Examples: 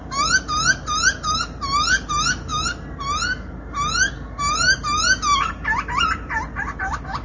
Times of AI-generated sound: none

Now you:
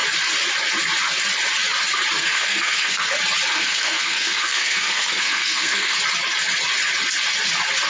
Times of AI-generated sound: 2.2-3.1 (codec, SNAC); 3.5-6.0

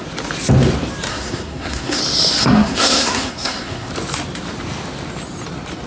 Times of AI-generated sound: 1.1-2.0 (codec, SNAC); 2.4-3.9

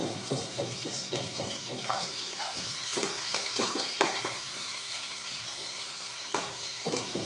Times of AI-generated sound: 0.0-7.3 (codec, SNAC)

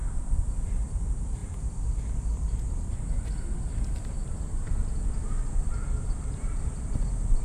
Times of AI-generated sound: none